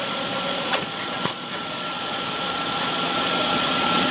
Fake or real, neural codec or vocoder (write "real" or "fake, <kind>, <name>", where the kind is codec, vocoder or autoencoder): fake, vocoder, Vocos